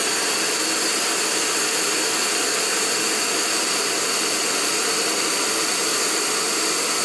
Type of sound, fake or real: real